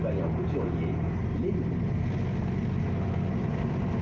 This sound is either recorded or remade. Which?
recorded